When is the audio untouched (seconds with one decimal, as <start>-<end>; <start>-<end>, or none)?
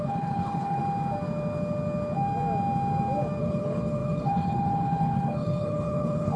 0.8-3.4